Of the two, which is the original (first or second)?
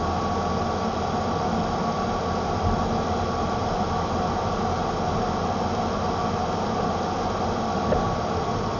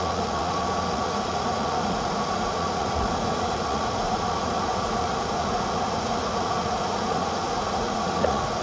first